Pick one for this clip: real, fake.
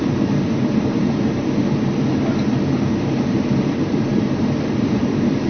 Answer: fake